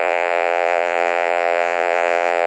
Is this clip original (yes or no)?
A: no